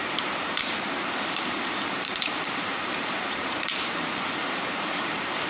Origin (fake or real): fake